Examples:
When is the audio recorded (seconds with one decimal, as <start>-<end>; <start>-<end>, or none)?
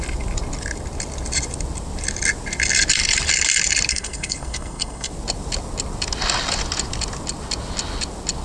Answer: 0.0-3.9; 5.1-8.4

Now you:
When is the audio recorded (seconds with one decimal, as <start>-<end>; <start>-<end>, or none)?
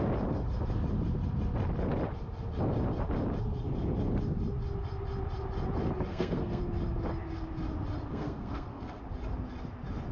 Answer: 0.0-6.1; 6.6-8.1; 9.0-10.1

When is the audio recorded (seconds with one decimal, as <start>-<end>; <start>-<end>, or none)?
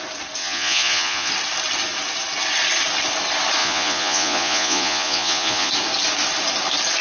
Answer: 0.0-0.4; 1.3-3.6; 5.7-7.0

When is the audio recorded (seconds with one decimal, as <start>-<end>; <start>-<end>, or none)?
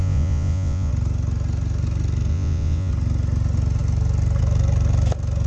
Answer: 0.9-2.3; 2.9-5.5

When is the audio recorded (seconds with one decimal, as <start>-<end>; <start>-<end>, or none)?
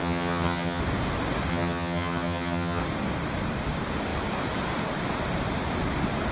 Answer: 0.8-1.5; 2.8-6.3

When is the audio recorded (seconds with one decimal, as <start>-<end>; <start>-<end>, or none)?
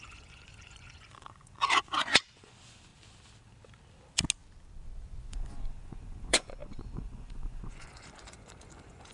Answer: 2.9-5.3